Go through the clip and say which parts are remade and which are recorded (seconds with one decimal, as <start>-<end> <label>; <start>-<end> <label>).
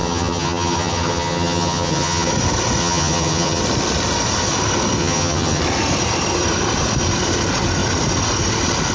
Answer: 0.0-2.3 remade; 2.3-2.8 recorded; 2.8-3.6 remade; 3.6-5.0 recorded; 5.0-5.6 remade; 5.6-8.9 recorded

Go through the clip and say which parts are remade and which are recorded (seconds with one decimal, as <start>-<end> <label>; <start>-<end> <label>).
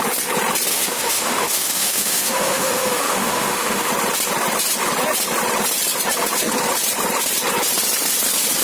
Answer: 0.0-0.7 recorded; 0.7-3.9 remade; 3.9-8.6 recorded